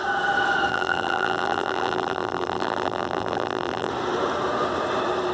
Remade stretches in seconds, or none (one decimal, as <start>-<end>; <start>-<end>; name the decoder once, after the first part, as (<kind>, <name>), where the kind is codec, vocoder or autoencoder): 0.7-3.9 (vocoder, BigVGAN v2)